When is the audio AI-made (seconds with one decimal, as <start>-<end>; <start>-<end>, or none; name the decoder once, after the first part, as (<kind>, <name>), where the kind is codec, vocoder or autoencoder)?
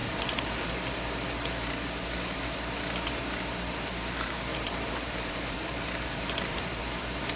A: 0.0-0.7 (vocoder, BigVGAN v2); 4.5-6.8